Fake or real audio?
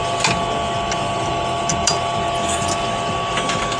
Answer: real